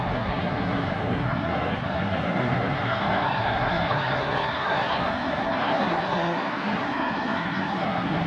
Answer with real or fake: fake